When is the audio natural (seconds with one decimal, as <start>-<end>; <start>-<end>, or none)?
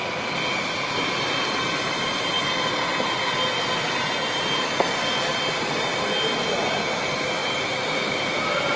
0.0-8.8